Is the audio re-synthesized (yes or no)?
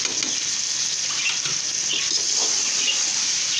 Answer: no